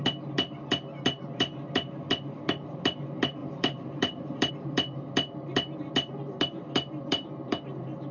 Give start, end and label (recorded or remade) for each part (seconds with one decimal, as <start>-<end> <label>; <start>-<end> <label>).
0.0-3.4 recorded; 3.4-4.5 remade; 4.5-8.1 recorded